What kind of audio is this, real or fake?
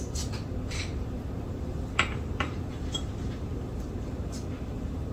fake